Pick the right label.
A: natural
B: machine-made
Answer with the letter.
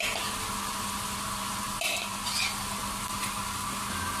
A